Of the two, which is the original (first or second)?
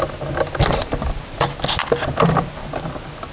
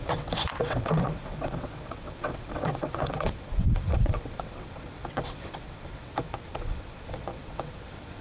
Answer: first